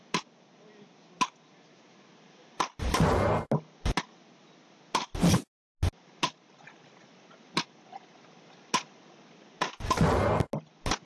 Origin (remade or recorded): recorded